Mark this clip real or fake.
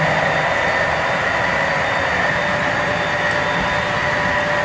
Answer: real